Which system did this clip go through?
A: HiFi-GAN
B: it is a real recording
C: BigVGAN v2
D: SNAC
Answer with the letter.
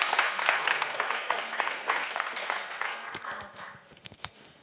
D